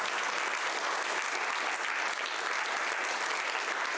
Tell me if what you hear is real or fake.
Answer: real